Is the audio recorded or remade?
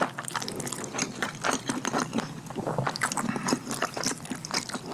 remade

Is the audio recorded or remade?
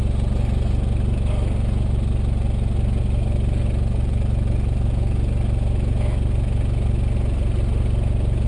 recorded